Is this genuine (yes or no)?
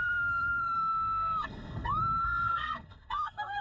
no